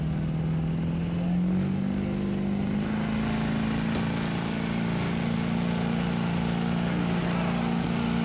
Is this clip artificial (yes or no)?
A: no